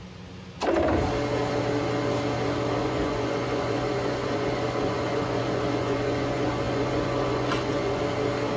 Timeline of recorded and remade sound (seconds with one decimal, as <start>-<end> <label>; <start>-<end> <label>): 0.0-2.8 recorded; 2.8-8.0 remade; 8.0-8.6 recorded